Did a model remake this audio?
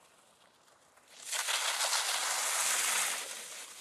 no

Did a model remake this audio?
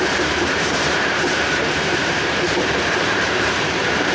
yes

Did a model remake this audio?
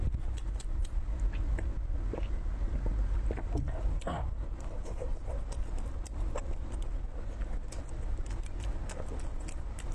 no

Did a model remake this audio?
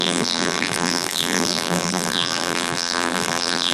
yes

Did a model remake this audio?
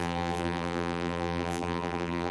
yes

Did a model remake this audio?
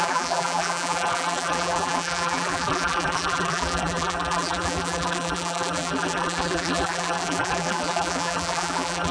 yes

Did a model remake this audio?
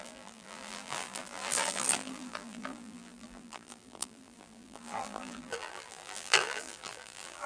yes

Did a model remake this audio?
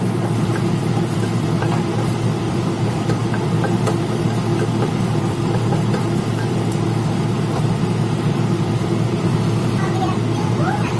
yes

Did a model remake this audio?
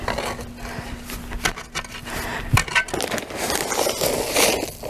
no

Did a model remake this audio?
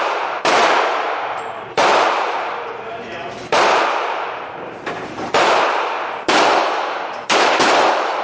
yes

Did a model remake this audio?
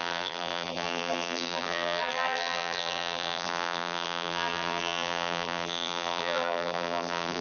yes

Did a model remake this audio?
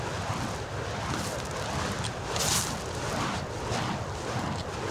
no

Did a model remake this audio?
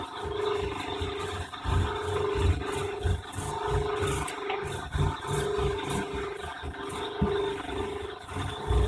no